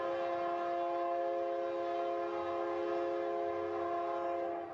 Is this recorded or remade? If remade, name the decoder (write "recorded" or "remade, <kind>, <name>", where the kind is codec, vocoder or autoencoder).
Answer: recorded